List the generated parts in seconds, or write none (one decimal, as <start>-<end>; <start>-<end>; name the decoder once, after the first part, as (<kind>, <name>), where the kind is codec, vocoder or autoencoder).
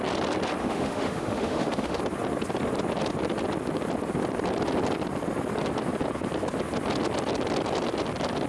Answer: 0.6-2.0 (autoencoder, DAC-VAE)